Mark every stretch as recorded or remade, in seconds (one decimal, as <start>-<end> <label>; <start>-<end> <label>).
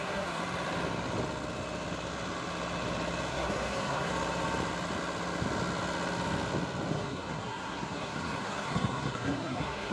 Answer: 0.0-0.4 remade; 0.4-3.3 recorded; 3.3-4.1 remade; 4.1-6.9 recorded; 6.9-9.9 remade